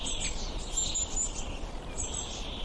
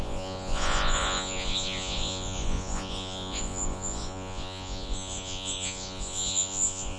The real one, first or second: first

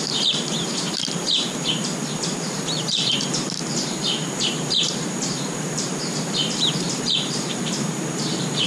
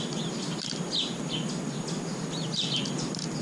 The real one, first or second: second